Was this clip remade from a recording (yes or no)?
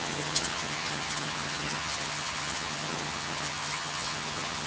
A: yes